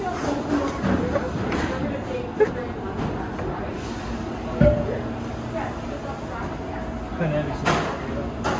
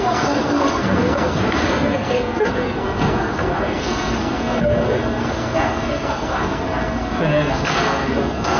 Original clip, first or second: first